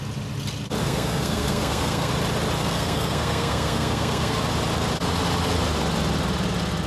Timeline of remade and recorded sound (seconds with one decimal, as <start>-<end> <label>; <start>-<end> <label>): 0.0-0.8 recorded; 0.8-2.1 remade; 2.1-2.6 recorded; 2.6-4.4 remade; 4.4-6.9 recorded